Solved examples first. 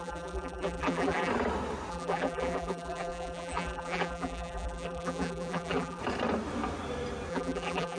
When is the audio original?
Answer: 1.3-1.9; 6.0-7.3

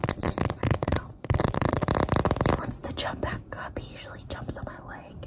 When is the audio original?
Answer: 1.9-5.3

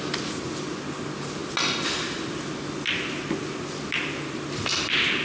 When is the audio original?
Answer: 0.0-5.2

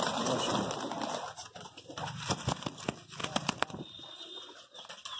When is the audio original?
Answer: 0.0-5.2

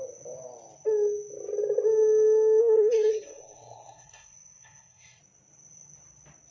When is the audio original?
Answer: 0.0-2.6; 5.2-6.5

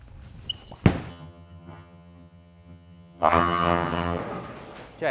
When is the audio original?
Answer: 0.0-1.1; 4.2-5.1

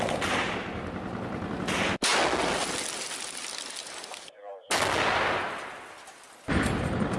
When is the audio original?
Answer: 0.0-7.2